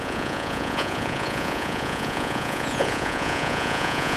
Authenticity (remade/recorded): remade